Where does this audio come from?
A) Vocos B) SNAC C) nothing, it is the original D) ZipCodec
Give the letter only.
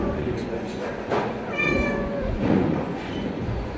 A